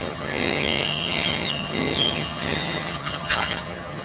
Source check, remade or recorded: remade